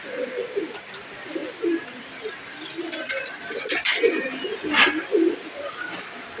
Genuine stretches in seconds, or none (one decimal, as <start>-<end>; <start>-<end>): 0.0-6.4